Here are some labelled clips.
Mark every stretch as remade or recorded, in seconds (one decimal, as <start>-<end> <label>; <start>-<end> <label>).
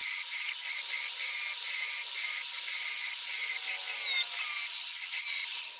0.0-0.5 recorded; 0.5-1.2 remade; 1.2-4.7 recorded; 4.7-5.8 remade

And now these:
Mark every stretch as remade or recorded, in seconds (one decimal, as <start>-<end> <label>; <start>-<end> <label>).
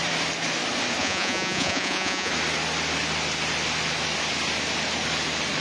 0.0-1.0 recorded; 1.0-2.3 remade; 2.3-5.6 recorded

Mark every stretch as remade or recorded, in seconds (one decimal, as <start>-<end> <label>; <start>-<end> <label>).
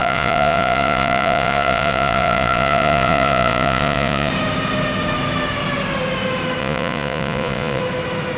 0.0-4.3 remade; 4.3-6.6 recorded; 6.6-7.8 remade; 7.8-8.4 recorded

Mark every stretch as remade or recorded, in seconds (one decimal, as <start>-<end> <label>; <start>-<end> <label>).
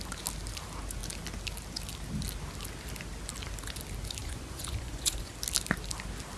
0.0-4.2 recorded; 4.2-5.3 remade; 5.3-6.4 recorded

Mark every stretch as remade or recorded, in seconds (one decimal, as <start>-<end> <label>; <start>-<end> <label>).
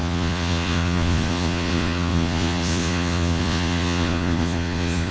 0.0-5.1 remade